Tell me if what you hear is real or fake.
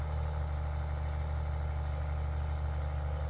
real